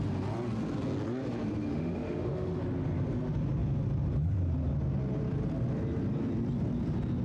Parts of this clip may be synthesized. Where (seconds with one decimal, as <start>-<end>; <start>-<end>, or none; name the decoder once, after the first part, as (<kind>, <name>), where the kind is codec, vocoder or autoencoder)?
1.7-2.6 (autoencoder, DAC-VAE)